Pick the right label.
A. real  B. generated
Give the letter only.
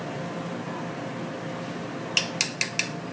A